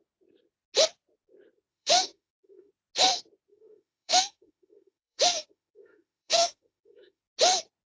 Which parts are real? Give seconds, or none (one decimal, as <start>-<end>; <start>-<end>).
0.0-1.7; 2.7-3.5; 7.2-7.9